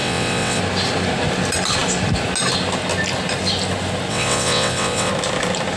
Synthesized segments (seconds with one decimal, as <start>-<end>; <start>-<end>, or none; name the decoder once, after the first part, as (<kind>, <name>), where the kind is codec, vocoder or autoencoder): 0.0-0.6 (vocoder, WaveNeXt); 4.1-5.1